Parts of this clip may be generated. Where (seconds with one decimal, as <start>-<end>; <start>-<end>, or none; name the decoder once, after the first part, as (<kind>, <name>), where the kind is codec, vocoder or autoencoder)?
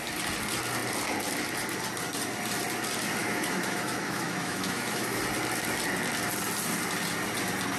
3.2-5.2 (autoencoder, DAC-VAE)